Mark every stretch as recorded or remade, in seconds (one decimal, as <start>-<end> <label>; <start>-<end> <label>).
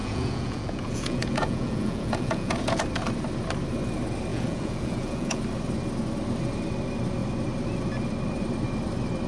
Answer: 0.0-2.8 remade; 2.8-4.3 recorded; 4.3-5.4 remade; 5.4-9.3 recorded